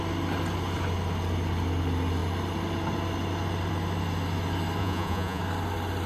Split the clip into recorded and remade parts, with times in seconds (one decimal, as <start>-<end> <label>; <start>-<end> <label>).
0.0-4.8 recorded; 4.8-5.4 remade; 5.4-6.1 recorded